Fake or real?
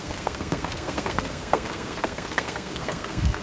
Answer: fake